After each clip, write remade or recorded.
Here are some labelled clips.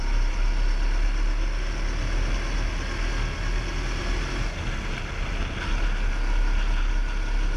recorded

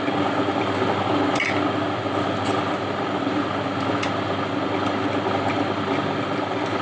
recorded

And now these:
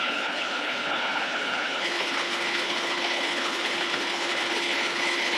remade